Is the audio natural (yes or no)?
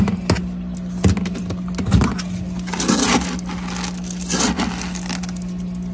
yes